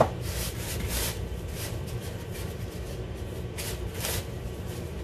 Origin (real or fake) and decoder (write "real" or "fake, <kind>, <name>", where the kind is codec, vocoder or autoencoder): fake, vocoder, BigVGAN v2